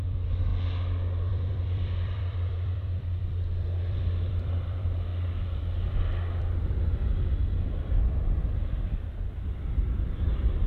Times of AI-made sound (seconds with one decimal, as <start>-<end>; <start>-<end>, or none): 0.0-0.5; 1.3-5.1; 6.4-7.0; 8.9-10.7